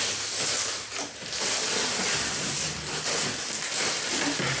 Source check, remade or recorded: recorded